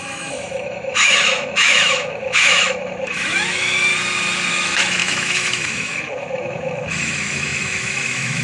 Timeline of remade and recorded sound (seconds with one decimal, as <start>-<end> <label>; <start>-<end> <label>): 0.0-3.9 remade; 3.9-4.5 recorded; 4.5-8.4 remade